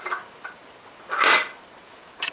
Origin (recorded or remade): recorded